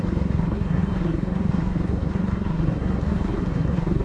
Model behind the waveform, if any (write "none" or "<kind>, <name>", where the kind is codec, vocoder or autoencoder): codec, SNAC